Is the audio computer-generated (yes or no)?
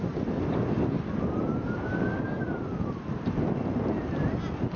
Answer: no